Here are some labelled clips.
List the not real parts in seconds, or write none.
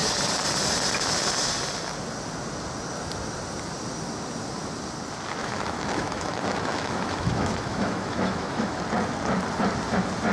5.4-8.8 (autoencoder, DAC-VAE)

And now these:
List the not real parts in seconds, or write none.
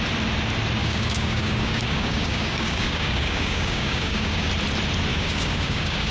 0.8-4.5 (codec, DAC); 5.1-6.1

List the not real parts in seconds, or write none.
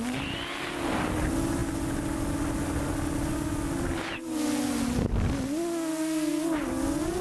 none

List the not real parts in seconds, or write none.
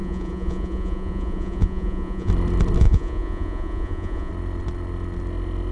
0.0-2.3 (vocoder, Vocos); 2.8-4.3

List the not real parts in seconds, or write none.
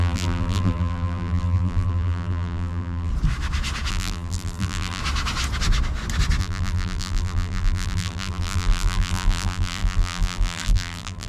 0.0-3.1 (vocoder, BigVGAN v2); 3.9-5.0; 6.4-11.3